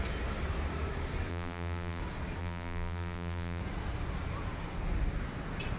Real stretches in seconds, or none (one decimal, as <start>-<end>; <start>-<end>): 0.0-1.3; 2.0-2.4; 3.6-5.8